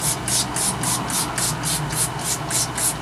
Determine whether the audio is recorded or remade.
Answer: recorded